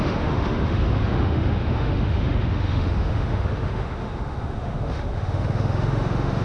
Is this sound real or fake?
fake